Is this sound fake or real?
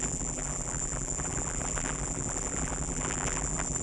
fake